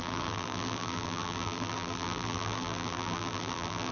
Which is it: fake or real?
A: fake